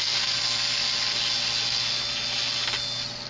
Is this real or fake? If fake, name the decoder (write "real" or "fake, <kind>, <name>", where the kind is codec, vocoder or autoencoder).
real